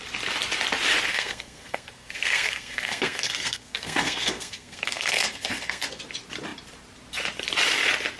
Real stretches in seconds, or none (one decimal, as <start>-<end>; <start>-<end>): 0.0-1.1; 6.0-8.2